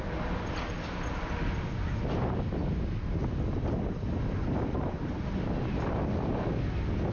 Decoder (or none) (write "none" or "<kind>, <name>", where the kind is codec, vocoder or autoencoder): none